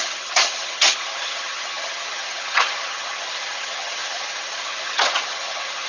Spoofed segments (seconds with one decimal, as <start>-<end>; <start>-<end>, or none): 0.0-5.9